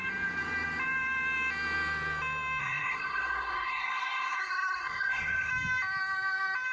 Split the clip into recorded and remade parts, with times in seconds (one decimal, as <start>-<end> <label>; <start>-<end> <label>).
0.0-2.6 recorded; 2.6-5.5 remade; 5.5-6.7 recorded

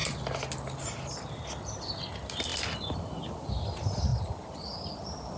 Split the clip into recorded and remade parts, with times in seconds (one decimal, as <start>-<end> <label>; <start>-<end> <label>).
0.0-5.4 recorded